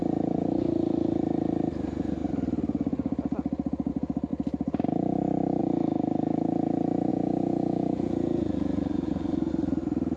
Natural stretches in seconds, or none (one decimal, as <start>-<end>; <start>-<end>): 0.0-7.1; 9.5-10.2